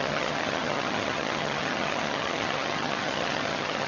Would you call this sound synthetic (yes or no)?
yes